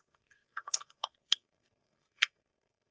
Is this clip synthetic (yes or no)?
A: yes